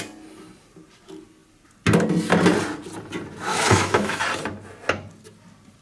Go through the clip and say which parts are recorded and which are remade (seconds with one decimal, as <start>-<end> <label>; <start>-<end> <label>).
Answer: 0.0-3.5 recorded; 3.5-4.2 remade; 4.2-5.8 recorded